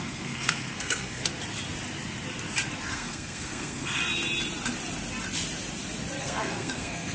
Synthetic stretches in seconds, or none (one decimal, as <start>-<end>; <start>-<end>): 0.0-1.2; 2.9-4.0; 6.2-7.1